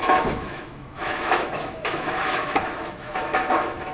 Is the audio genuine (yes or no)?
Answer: no